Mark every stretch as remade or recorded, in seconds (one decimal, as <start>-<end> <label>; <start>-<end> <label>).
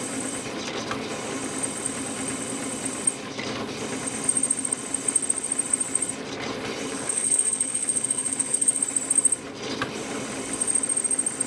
0.0-6.9 recorded; 6.9-8.8 remade; 8.8-11.5 recorded